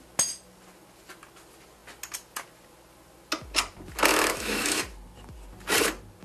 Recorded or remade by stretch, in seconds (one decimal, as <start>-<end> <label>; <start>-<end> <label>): 0.0-4.1 recorded; 4.1-4.8 remade; 4.8-6.2 recorded